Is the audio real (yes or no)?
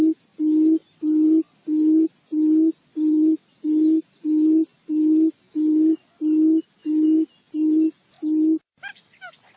yes